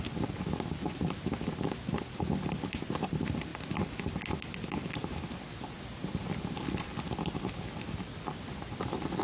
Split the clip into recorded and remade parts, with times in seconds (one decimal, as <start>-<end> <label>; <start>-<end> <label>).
0.0-9.2 recorded